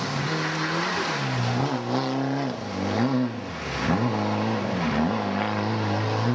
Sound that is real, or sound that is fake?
real